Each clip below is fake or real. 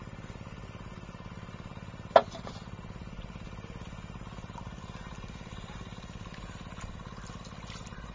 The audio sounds real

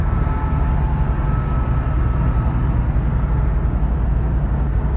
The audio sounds real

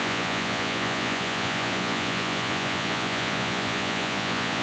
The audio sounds fake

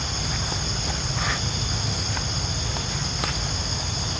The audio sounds real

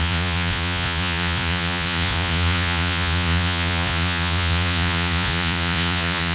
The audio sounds fake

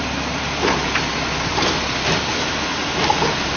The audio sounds real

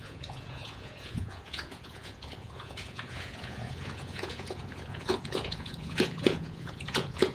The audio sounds fake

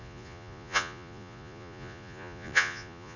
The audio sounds fake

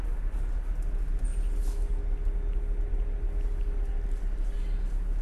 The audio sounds real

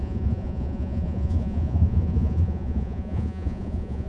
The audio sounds fake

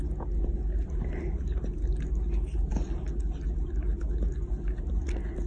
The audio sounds real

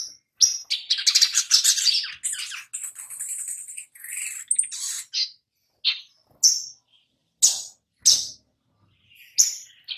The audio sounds real